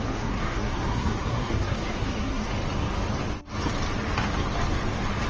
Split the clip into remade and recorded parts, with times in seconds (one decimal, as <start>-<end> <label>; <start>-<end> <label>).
0.0-2.5 remade; 2.5-5.3 recorded